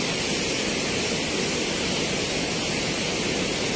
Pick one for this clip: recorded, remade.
recorded